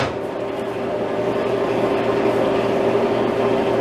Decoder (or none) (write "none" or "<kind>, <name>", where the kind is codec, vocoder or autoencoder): none